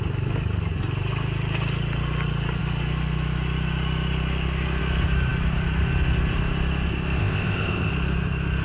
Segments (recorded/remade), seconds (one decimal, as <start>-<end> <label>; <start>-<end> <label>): 0.0-7.2 recorded; 7.2-7.9 remade; 7.9-8.6 recorded